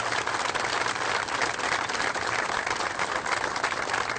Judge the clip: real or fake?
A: real